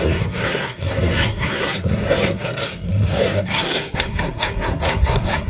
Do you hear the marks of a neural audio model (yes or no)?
yes